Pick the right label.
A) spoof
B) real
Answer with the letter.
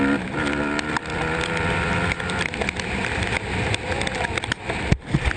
A